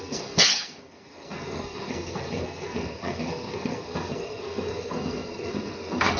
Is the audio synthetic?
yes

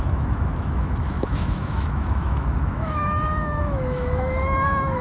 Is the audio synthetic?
yes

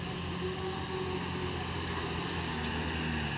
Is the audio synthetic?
no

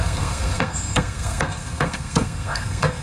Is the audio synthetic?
yes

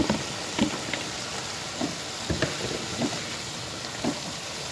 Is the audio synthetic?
no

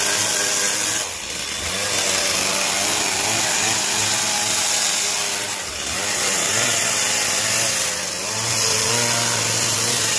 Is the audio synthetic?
no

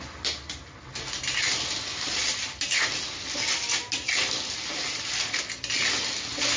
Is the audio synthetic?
no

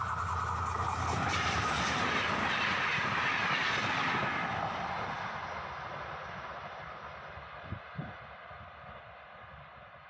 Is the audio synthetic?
no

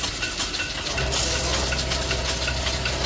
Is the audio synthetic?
no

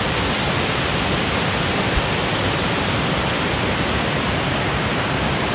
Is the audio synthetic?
no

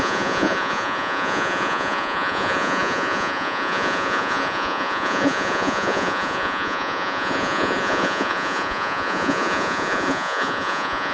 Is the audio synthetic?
yes